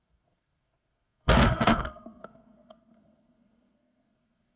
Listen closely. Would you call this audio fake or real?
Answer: fake